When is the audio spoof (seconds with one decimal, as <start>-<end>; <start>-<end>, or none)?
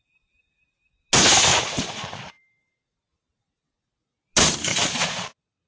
1.5-2.3; 4.7-5.7